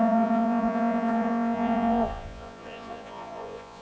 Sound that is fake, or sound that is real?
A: fake